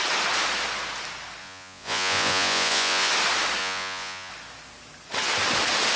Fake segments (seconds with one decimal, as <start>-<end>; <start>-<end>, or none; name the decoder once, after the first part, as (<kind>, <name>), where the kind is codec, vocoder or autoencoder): 1.4-3.1 (vocoder, Vocos); 3.6-4.3

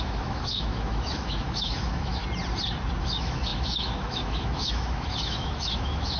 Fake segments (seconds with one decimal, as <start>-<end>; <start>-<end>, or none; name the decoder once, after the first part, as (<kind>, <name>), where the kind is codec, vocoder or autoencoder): 0.0-2.2 (autoencoder, DAC-VAE); 3.0-6.2

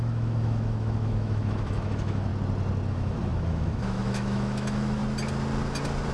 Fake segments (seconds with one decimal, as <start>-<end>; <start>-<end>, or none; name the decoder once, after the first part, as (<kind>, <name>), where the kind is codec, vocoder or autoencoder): 0.0-2.3 (autoencoder, DAC-VAE); 2.9-5.0

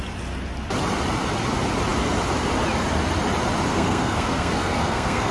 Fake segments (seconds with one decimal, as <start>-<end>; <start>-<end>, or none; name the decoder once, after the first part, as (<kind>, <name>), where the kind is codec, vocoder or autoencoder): 3.7-5.3 (codec, SNAC)

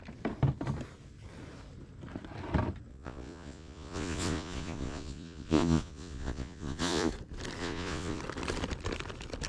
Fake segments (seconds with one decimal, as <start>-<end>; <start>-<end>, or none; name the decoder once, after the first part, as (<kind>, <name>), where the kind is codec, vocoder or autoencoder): 2.9-7.1 (vocoder, Vocos); 7.6-8.2

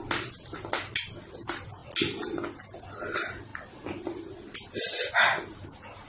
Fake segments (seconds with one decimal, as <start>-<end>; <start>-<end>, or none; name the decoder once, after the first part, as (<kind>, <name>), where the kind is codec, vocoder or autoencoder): none

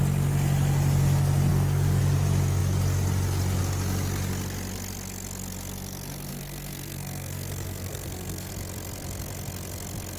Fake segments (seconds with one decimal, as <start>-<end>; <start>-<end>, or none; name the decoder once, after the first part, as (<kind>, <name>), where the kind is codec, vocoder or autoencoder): 1.5-2.0 (codec, SNAC); 6.3-8.5

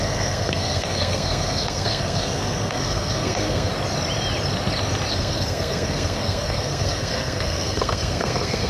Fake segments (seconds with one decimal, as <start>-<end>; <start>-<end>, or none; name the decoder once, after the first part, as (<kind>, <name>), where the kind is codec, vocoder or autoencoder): 0.0-3.7 (codec, SNAC); 5.1-8.7